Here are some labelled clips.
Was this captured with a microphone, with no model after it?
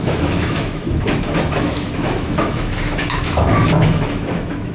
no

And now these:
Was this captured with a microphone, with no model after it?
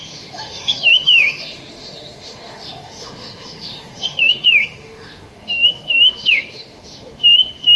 no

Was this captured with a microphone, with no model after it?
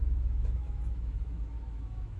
no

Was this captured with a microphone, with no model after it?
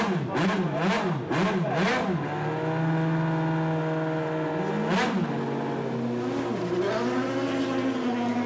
yes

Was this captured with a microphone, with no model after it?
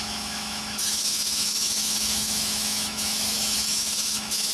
no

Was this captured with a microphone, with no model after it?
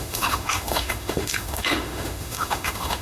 no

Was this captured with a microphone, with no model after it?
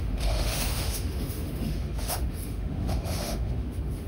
no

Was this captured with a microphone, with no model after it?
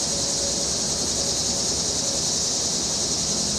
yes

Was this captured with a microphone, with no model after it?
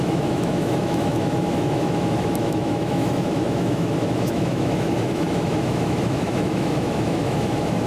no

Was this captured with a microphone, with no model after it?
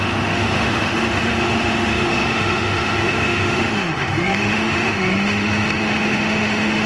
no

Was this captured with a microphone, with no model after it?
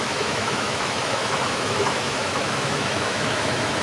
no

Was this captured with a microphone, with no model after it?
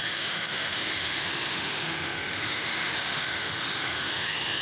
no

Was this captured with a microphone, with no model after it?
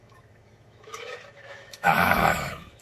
no